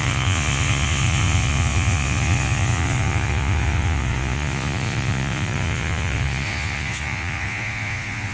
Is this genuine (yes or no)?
no